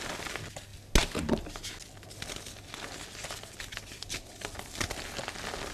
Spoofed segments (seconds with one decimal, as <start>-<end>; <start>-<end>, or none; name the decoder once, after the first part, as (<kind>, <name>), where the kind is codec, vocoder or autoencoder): none